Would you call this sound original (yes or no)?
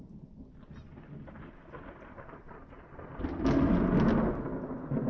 yes